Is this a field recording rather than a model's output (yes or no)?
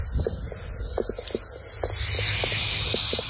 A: yes